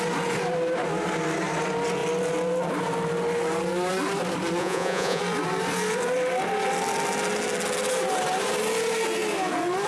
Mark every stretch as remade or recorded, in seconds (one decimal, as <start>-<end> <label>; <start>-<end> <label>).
0.0-4.6 recorded; 4.6-5.2 remade; 5.2-9.9 recorded